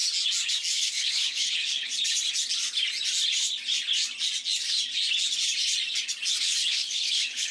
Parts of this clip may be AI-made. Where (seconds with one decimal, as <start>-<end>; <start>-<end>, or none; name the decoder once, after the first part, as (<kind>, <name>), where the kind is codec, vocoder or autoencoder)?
0.7-1.9 (codec, HILCodec); 6.4-7.5